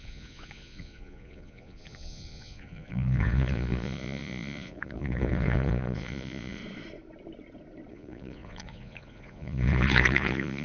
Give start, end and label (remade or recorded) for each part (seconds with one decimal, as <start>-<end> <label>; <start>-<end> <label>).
0.0-6.6 remade; 6.6-7.9 recorded; 7.9-10.6 remade